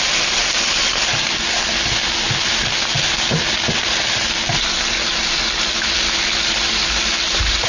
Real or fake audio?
real